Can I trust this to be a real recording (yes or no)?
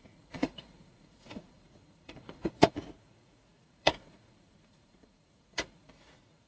no